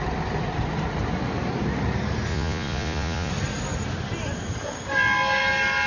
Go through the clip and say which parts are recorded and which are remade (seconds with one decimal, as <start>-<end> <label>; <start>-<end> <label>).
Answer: 0.0-2.3 recorded; 2.3-3.3 remade; 3.3-5.9 recorded